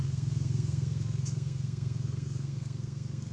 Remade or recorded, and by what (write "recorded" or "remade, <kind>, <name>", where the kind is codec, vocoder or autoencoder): remade, codec, SNAC